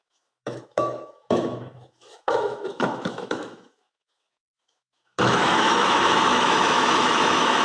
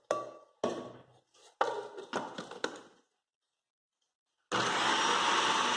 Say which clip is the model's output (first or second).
first